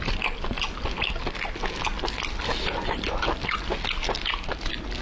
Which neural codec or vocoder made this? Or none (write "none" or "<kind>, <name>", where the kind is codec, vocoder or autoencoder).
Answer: none